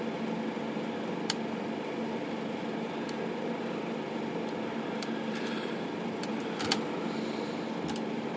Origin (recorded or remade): remade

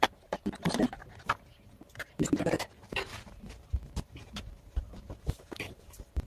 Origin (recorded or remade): remade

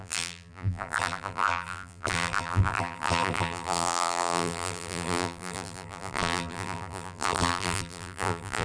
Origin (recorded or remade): remade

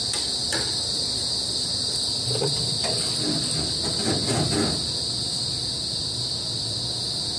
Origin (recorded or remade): recorded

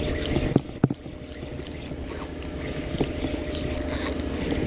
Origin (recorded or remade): recorded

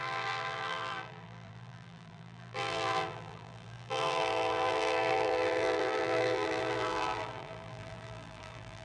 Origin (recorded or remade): remade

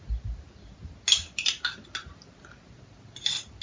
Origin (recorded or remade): recorded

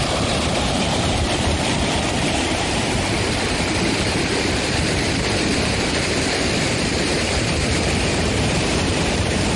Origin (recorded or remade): remade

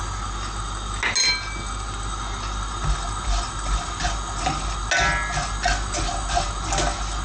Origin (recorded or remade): recorded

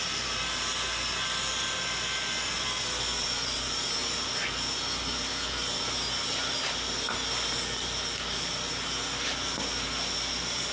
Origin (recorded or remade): remade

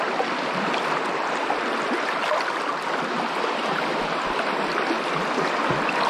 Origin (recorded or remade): recorded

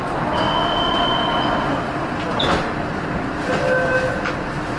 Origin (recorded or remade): recorded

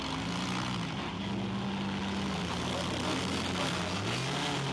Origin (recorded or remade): recorded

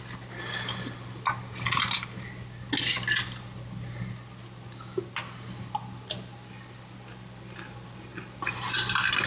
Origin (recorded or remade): recorded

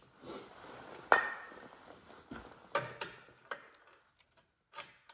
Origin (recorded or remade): recorded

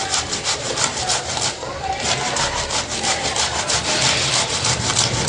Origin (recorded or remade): remade